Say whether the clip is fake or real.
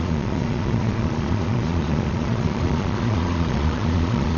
fake